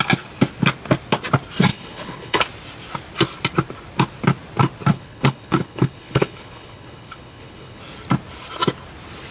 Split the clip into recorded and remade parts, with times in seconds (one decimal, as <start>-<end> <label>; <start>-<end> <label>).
0.0-1.7 recorded; 1.7-2.4 remade; 2.4-4.9 recorded; 4.9-7.8 remade; 7.8-9.3 recorded